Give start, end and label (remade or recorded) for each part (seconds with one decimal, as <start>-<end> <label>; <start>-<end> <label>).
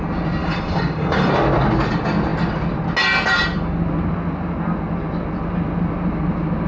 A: 0.0-0.4 recorded; 0.4-1.3 remade; 1.3-6.7 recorded